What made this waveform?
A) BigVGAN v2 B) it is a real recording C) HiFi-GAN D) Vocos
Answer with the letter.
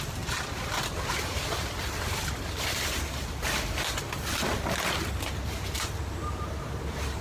B